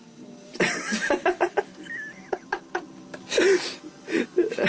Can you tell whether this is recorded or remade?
remade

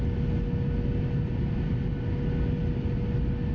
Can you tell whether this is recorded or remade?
recorded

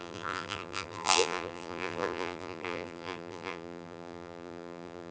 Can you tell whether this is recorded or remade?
remade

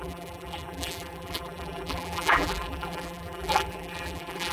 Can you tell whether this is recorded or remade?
remade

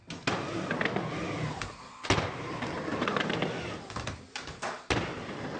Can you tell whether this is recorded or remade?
recorded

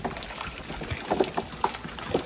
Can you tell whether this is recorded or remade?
recorded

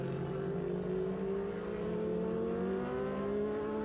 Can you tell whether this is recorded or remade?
recorded